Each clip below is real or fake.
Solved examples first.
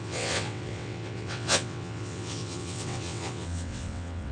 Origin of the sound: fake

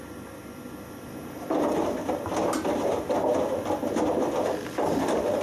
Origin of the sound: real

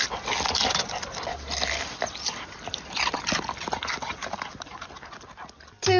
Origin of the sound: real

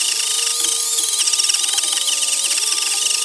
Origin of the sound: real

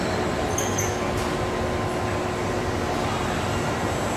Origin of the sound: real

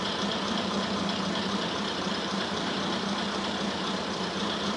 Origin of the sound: fake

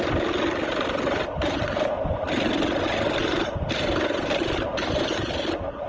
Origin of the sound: real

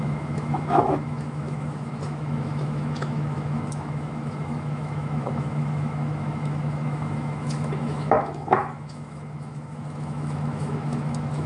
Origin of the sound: fake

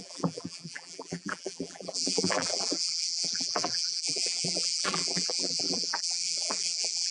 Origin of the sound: fake